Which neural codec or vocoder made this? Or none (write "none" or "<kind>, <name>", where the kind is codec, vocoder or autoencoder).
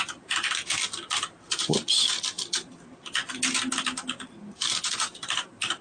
none